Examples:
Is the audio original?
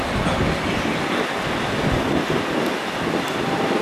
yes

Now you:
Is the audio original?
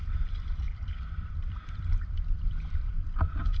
no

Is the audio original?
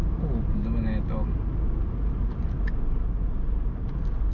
yes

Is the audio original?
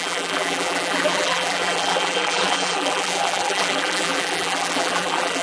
no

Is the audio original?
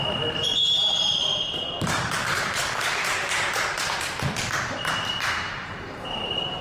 no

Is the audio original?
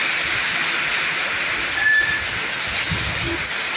yes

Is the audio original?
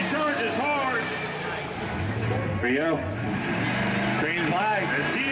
yes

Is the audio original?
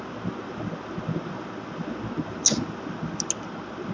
yes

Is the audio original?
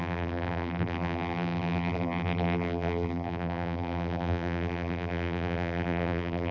no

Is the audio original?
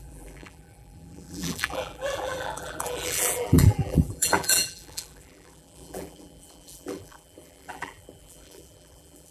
no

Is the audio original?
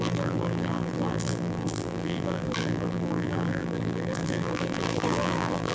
no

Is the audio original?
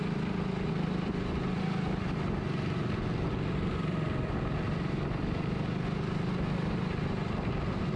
yes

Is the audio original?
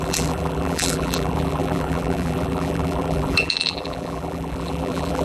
no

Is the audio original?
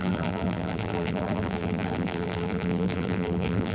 no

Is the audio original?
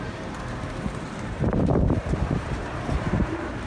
no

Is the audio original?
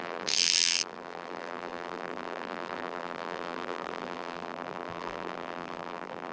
no